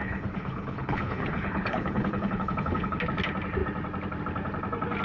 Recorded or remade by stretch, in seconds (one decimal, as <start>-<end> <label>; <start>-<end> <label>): 0.0-3.0 remade; 3.0-5.0 recorded